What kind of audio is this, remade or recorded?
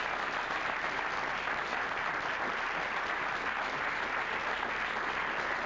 recorded